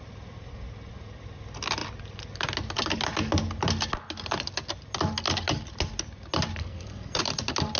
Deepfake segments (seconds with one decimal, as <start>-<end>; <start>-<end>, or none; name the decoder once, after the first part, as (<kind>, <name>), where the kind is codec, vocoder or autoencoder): 6.6-7.2 (codec, SNAC)